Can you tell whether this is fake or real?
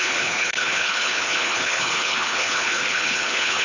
fake